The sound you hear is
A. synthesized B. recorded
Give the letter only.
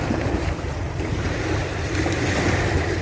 A